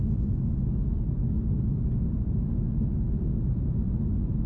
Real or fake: real